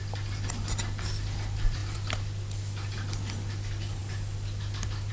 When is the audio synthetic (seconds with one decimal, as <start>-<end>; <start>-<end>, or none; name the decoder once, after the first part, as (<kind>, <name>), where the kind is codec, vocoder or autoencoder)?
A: 0.0-1.8 (vocoder, BigVGAN v2); 3.5-4.0

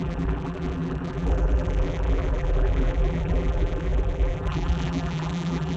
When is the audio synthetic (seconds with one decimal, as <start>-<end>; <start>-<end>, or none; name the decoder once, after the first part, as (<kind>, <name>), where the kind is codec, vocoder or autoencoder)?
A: 0.0-5.8 (vocoder, BigVGAN v2)